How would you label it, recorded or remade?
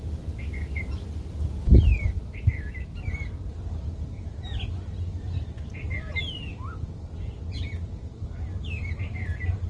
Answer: recorded